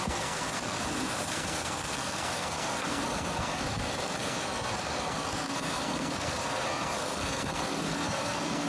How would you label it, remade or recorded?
remade